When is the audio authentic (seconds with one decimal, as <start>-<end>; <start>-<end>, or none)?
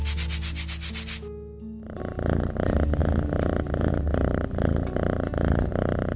0.0-6.2